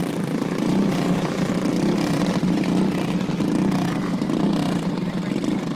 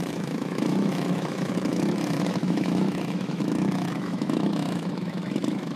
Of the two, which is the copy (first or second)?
second